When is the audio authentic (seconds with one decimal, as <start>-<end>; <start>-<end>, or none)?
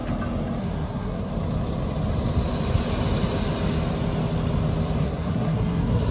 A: 0.0-0.6; 1.3-5.0